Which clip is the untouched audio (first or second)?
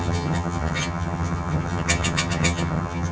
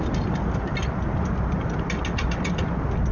second